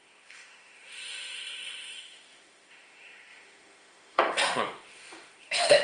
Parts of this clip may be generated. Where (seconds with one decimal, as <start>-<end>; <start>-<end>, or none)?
0.0-5.8